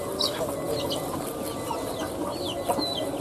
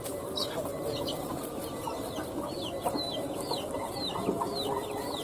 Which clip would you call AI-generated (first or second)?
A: second